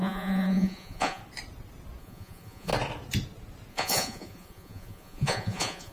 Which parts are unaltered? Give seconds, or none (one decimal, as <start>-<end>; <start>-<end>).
1.2-2.0; 2.7-3.7